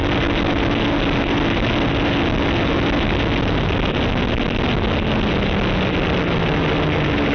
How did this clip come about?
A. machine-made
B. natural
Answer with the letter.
B